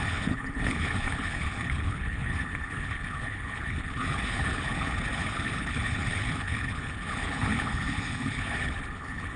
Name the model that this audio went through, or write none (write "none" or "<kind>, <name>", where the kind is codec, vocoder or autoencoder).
codec, HILCodec